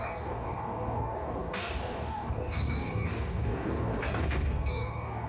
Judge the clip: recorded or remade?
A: remade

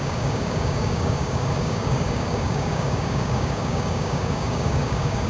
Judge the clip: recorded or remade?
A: remade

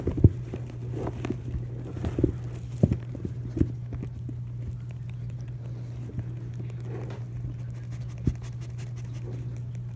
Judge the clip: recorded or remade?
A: recorded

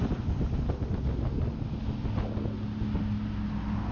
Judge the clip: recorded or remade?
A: recorded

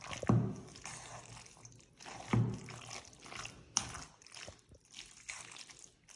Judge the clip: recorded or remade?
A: recorded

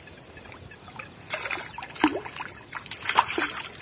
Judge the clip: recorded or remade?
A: recorded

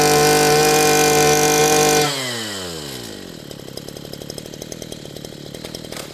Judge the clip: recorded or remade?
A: recorded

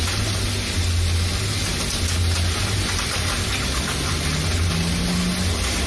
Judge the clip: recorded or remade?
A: recorded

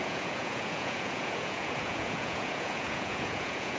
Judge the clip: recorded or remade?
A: remade